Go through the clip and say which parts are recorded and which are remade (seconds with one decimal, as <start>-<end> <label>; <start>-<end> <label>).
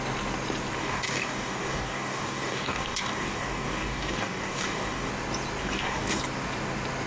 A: 0.0-0.8 recorded; 0.8-5.1 remade; 5.1-5.6 recorded; 5.6-6.2 remade; 6.2-7.1 recorded